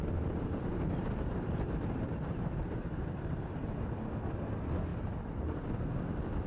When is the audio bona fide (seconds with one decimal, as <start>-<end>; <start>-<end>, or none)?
3.9-4.9; 5.6-6.5